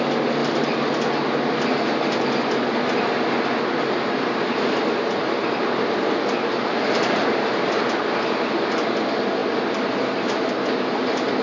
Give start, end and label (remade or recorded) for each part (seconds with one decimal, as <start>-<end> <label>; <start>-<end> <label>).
0.0-11.4 recorded